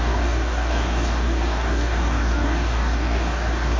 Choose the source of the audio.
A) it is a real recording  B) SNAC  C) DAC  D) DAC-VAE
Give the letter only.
C